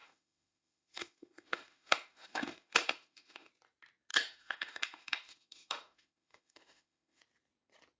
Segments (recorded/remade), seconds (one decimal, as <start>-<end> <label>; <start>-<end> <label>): 0.0-3.5 remade; 3.5-4.1 recorded; 4.1-7.2 remade; 7.2-8.0 recorded